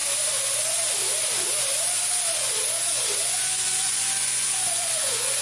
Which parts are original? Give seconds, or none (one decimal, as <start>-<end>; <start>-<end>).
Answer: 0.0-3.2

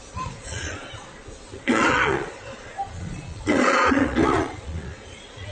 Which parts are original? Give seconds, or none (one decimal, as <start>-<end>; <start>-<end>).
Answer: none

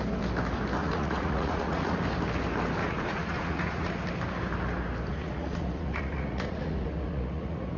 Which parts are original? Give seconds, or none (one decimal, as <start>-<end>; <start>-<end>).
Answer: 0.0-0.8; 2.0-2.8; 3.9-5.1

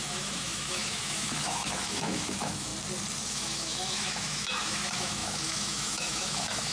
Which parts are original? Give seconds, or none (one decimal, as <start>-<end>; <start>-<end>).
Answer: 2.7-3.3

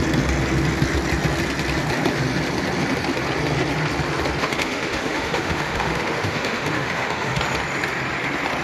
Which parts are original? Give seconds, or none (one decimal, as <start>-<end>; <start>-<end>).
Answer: 0.0-4.4; 7.4-8.6